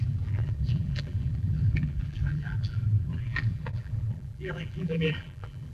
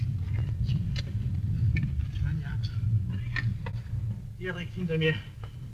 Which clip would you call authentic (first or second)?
second